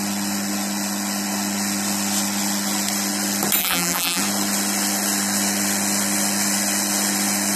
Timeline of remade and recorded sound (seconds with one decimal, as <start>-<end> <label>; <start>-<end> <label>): 0.0-3.6 recorded; 3.6-4.2 remade; 4.2-7.6 recorded